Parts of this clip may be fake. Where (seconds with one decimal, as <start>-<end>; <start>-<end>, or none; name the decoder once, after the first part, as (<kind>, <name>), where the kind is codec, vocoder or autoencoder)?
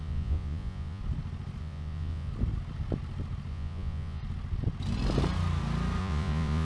0.0-1.0 (vocoder, Vocos); 1.6-2.3; 3.5-4.2; 6.0-6.6